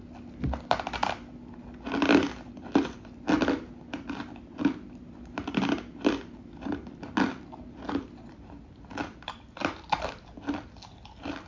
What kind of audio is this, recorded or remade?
recorded